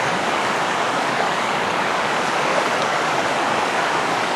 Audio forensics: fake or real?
fake